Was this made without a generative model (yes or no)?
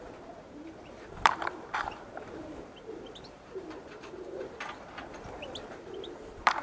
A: no